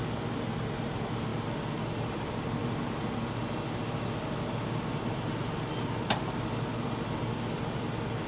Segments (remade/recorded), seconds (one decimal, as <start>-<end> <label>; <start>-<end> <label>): 0.0-8.3 recorded